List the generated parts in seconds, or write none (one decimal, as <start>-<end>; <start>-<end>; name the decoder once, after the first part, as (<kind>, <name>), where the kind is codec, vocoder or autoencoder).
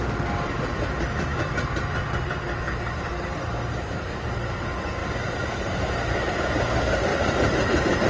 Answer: 7.1-8.1 (vocoder, BigVGAN v2)